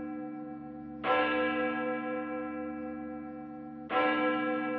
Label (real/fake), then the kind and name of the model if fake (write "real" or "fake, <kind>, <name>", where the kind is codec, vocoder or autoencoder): real